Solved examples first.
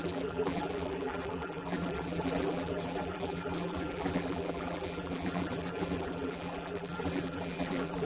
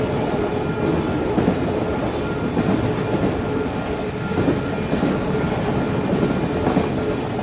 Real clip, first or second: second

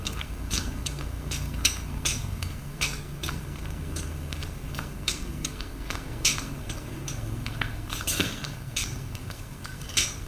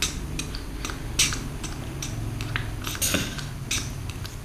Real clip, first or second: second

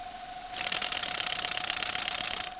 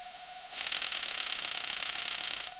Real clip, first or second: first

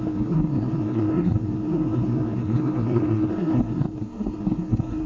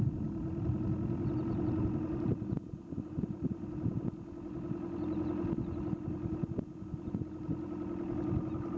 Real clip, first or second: second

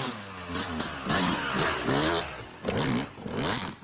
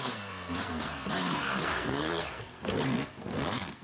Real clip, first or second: first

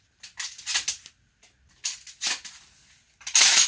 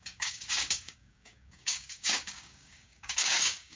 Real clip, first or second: first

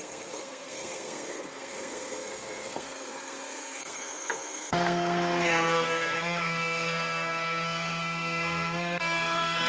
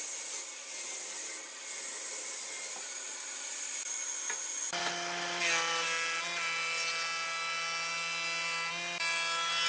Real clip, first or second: second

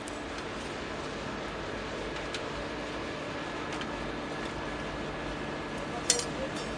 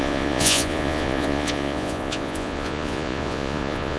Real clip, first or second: first